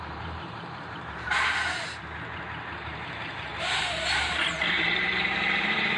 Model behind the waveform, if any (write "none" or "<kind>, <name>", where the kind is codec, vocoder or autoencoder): vocoder, BigVGAN v2